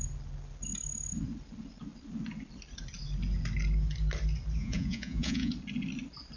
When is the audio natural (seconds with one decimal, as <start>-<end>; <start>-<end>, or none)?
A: 0.0-4.6; 5.5-6.4